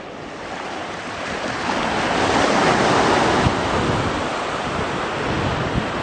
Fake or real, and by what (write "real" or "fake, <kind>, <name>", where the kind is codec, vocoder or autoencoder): real